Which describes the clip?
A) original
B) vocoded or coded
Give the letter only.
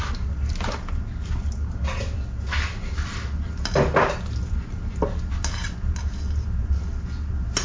A